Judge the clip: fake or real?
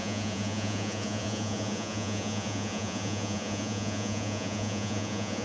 fake